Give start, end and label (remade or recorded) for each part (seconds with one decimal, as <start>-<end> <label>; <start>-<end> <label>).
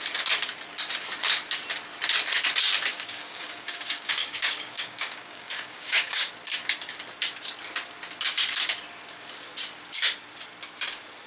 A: 0.0-2.9 recorded; 2.9-6.3 remade; 6.3-11.3 recorded